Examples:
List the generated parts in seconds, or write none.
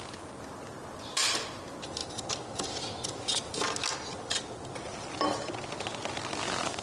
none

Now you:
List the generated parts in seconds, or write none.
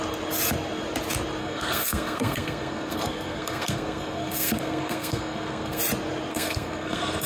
1.4-5.8 (codec, SNAC); 6.3-7.3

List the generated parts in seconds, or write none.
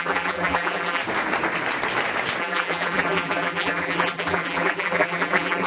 0.0-1.0 (vocoder, BigVGAN v2); 2.4-5.7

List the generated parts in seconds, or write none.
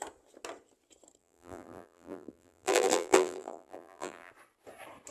1.2-4.3 (vocoder, BigVGAN v2)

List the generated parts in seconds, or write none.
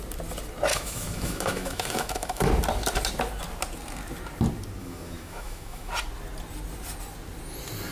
0.7-2.5 (autoencoder, DAC-VAE); 4.8-5.9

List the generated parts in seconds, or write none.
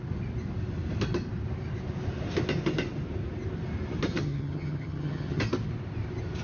4.1-5.4 (vocoder, HiFi-GAN)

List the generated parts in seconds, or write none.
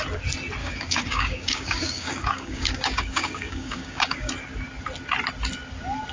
0.6-4.3 (codec, DAC)